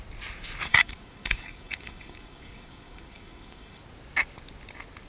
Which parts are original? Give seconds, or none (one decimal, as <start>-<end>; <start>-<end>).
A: 0.0-0.7; 3.8-5.1